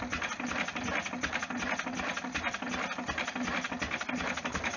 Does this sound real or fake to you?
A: real